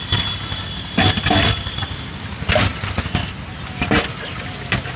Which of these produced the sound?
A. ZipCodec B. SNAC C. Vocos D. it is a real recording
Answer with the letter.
D